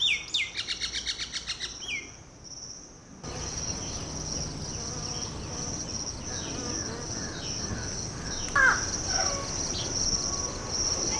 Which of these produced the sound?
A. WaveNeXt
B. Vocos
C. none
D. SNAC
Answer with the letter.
C